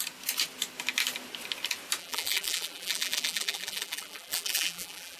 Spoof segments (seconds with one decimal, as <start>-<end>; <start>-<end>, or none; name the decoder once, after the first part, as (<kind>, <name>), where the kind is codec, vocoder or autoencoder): 2.0-5.2 (vocoder, BigVGAN v2)